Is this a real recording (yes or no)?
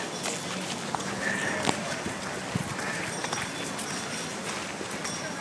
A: yes